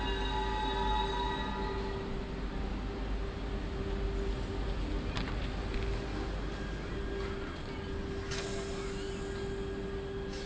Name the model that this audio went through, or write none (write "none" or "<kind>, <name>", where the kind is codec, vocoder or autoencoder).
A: none